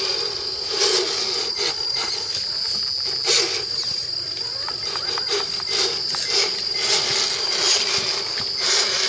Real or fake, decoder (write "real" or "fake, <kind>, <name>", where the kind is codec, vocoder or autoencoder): real